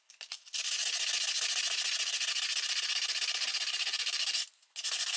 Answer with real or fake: real